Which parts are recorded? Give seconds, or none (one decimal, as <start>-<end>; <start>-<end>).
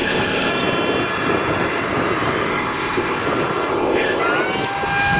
0.5-2.5; 3.2-3.7; 4.2-5.2